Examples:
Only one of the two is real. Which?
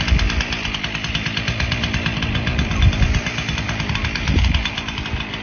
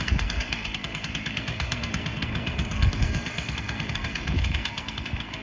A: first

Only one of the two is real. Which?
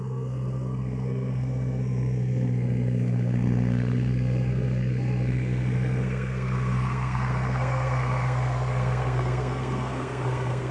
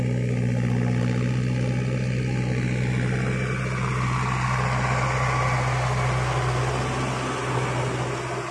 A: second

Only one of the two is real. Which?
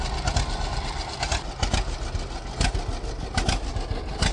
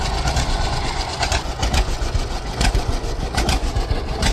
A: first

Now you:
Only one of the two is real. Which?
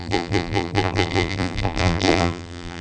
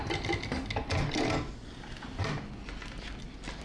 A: second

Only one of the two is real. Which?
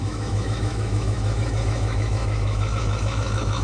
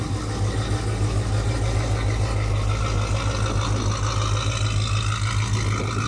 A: second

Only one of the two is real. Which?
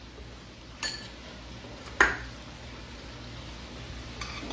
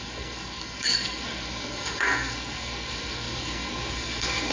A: first